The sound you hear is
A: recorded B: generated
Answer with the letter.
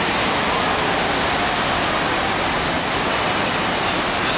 B